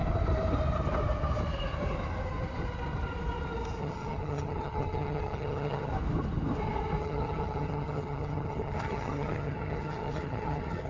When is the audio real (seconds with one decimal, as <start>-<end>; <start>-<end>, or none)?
0.0-3.8; 5.9-7.0